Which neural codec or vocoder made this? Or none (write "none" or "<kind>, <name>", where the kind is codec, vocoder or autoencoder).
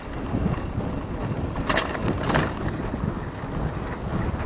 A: none